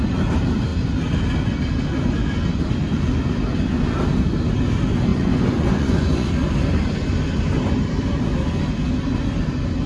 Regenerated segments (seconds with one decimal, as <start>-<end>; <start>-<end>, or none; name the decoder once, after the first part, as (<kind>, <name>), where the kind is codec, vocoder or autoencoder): 5.1-6.3 (vocoder, Vocos)